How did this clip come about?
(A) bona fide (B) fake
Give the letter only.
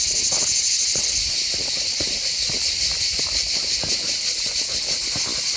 A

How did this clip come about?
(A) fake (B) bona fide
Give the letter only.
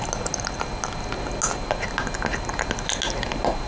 B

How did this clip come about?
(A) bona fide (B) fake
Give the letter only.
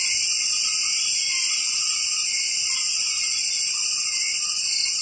A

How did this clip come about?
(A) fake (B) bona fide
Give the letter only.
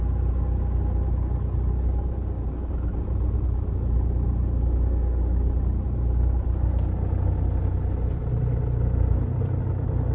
B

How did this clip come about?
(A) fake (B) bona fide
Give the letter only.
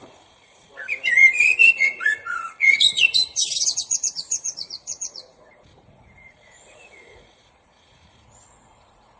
A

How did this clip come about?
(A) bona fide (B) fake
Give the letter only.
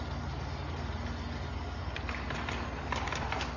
A